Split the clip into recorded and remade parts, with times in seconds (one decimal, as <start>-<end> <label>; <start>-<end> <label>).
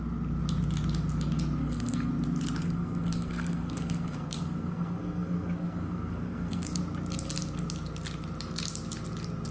0.0-1.6 recorded; 1.6-2.1 remade; 2.1-2.6 recorded; 2.6-6.8 remade; 6.8-9.5 recorded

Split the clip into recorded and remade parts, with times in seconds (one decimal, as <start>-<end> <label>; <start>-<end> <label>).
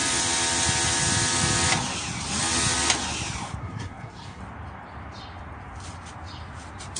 0.0-3.6 recorded; 3.6-4.4 remade; 4.4-7.0 recorded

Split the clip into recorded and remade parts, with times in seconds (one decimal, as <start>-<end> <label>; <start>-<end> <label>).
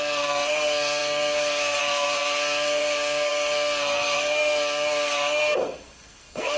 0.0-6.6 remade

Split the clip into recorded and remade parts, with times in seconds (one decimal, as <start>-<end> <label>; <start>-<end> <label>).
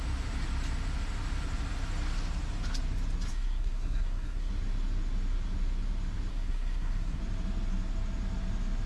0.0-3.3 recorded; 3.3-4.5 remade; 4.5-6.3 recorded; 6.3-7.2 remade; 7.2-8.9 recorded